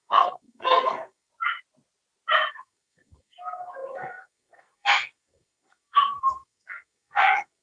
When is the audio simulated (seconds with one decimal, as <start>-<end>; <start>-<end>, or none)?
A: 0.0-1.3; 2.5-7.6